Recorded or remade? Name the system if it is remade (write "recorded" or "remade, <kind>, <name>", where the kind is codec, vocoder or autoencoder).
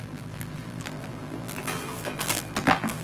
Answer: remade, vocoder, BigVGAN v2